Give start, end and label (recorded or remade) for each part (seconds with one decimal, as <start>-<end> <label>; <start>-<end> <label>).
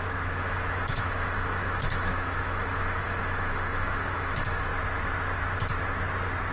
0.0-4.7 remade; 4.7-6.5 recorded